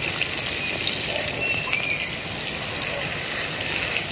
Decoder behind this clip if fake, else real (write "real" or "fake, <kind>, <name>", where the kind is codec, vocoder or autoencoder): real